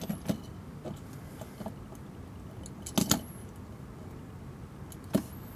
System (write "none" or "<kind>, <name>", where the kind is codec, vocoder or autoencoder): none